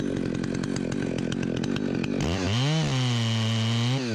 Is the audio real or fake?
real